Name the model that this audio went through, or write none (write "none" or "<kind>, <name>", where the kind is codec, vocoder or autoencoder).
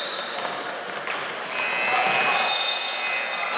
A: none